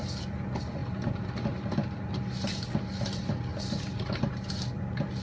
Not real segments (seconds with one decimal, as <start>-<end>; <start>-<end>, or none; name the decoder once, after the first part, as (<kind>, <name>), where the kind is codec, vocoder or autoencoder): none